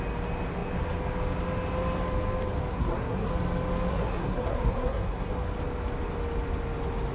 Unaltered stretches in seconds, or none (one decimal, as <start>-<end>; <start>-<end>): 0.0-2.7; 3.3-3.9; 5.3-7.1